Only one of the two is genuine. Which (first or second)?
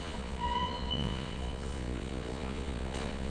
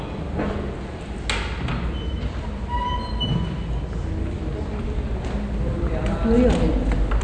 second